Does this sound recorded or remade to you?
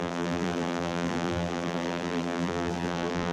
remade